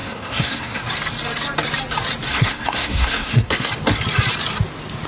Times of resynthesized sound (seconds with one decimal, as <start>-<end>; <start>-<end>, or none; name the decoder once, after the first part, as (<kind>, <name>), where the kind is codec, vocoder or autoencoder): 0.0-0.8 (codec, SNAC); 2.3-3.7